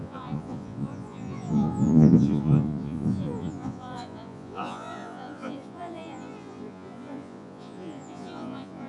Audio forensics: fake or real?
fake